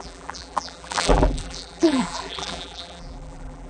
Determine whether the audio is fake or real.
fake